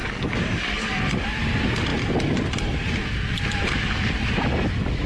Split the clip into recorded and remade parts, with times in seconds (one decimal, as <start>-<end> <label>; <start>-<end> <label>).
0.0-1.0 remade; 1.0-5.1 recorded